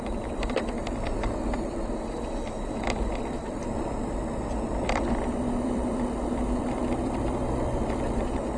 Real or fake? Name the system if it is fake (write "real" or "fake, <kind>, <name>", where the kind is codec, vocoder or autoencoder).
fake, vocoder, BigVGAN v2